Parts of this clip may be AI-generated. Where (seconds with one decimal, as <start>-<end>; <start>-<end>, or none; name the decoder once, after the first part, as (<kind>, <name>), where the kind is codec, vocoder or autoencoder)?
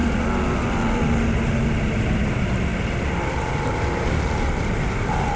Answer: none